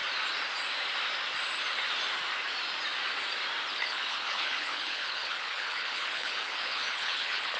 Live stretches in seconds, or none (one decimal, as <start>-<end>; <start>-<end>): 0.0-3.7